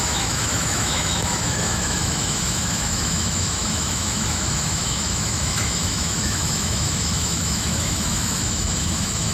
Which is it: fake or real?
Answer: fake